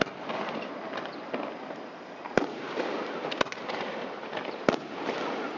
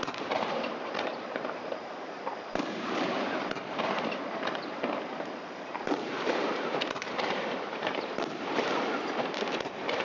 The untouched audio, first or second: first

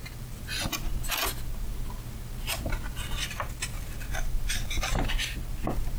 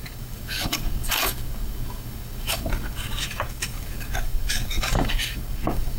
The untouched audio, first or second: first